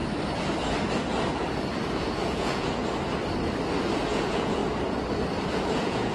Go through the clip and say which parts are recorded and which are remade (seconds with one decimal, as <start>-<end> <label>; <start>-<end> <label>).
0.0-1.8 recorded; 1.8-2.8 remade; 2.8-4.1 recorded; 4.1-4.6 remade; 4.6-5.5 recorded; 5.5-6.1 remade